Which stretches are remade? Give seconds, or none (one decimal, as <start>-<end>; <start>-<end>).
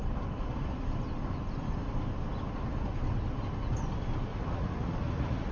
4.3-5.5